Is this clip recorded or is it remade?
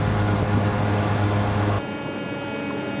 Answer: recorded